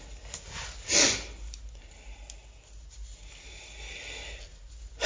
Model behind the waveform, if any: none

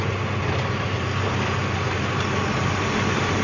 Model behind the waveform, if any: none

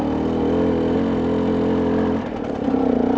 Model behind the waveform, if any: none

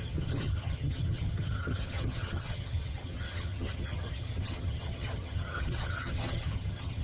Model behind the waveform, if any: vocoder, HiFi-GAN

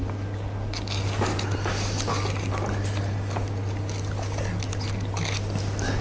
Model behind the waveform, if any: none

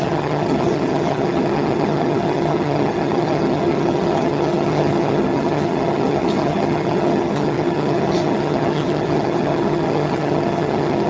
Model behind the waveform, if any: vocoder, HiFi-GAN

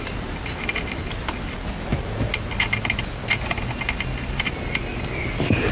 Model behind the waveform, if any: none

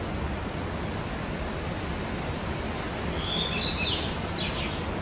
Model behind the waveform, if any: none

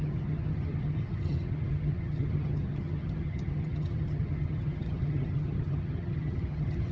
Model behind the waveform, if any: vocoder, HiFi-GAN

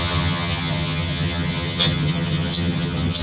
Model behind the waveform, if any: vocoder, HiFi-GAN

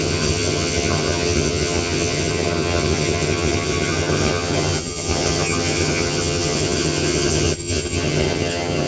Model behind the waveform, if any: vocoder, HiFi-GAN